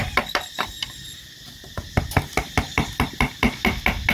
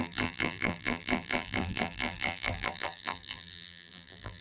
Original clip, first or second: first